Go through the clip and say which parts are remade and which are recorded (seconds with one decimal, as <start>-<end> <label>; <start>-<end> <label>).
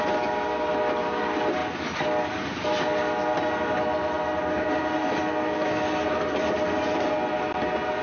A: 0.0-8.0 recorded